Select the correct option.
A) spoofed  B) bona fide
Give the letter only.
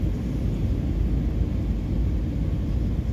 B